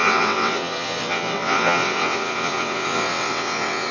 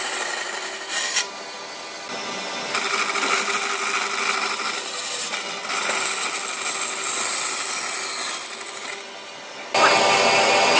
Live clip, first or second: second